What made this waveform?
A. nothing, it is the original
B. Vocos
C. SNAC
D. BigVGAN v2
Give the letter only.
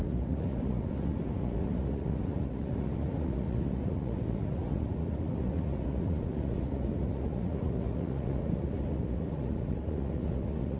B